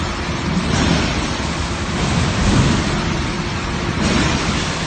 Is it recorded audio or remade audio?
recorded